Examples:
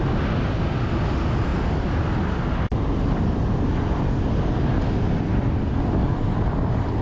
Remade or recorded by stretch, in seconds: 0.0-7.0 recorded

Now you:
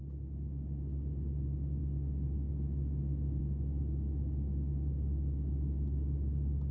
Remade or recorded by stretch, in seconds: 0.0-1.8 recorded; 1.8-3.4 remade; 3.4-6.7 recorded

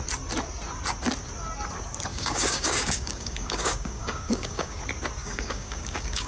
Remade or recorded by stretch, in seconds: 0.0-2.1 recorded; 2.1-4.8 remade; 4.8-5.2 recorded; 5.2-6.3 remade

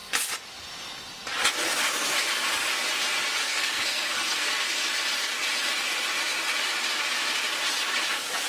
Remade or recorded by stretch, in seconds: 0.0-3.4 recorded; 3.4-4.5 remade; 4.5-8.5 recorded

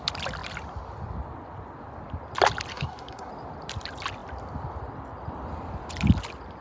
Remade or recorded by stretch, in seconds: 0.0-2.7 recorded; 2.7-3.3 remade; 3.3-6.6 recorded

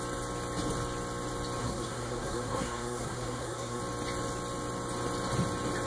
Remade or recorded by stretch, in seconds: 0.0-1.6 recorded; 1.6-3.8 remade; 3.8-5.9 recorded